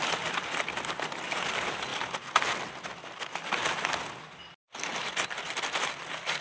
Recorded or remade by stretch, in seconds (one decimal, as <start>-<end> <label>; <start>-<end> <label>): 0.0-6.4 recorded